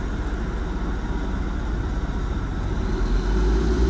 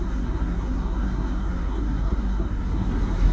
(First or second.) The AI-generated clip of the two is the second